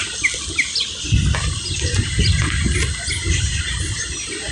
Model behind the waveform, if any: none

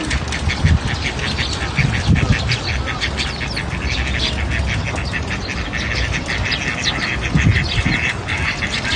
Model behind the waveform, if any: none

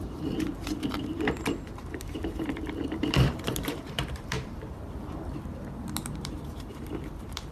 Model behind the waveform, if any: vocoder, BigVGAN v2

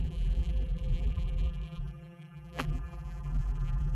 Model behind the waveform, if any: vocoder, BigVGAN v2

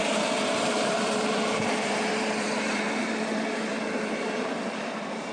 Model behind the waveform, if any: vocoder, BigVGAN v2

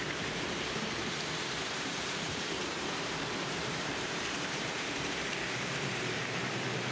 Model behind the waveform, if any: vocoder, BigVGAN v2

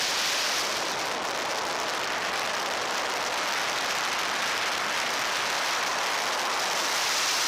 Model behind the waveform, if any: none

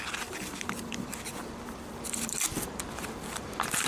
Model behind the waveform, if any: vocoder, BigVGAN v2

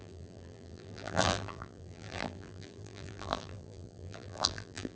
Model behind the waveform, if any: vocoder, BigVGAN v2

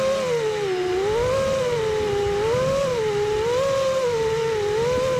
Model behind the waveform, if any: none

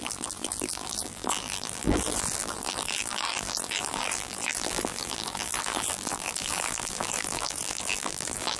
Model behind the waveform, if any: vocoder, BigVGAN v2